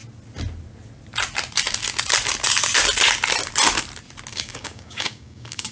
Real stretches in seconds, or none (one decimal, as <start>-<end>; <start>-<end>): 0.0-4.3